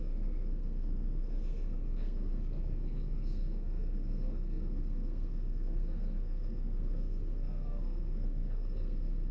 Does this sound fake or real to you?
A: fake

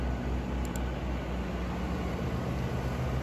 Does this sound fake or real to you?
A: real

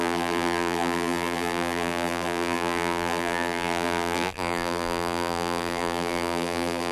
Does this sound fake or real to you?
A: fake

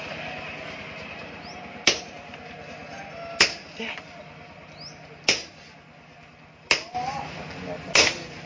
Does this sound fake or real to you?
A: real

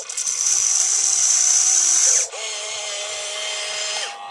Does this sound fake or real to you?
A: real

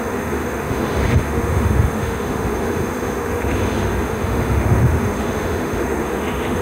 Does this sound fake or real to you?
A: fake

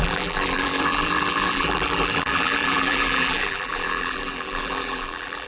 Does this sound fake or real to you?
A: fake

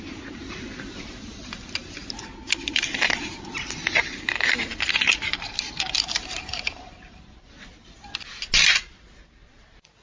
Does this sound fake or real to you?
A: real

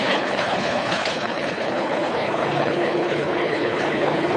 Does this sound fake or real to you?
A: fake